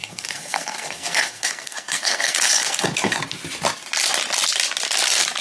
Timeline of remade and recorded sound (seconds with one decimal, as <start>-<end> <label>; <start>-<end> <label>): 0.0-3.2 remade; 3.2-5.4 recorded